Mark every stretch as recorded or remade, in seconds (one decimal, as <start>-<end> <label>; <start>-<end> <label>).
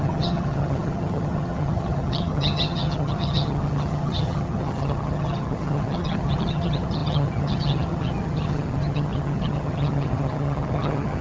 0.0-11.2 remade